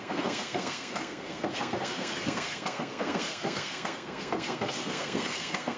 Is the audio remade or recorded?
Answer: remade